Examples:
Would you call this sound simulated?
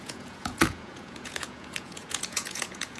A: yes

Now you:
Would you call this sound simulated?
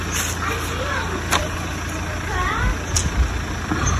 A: no